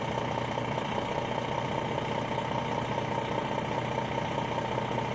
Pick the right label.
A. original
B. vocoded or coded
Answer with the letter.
A